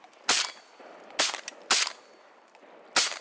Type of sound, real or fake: real